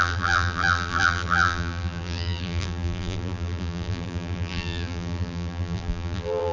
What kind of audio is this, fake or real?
fake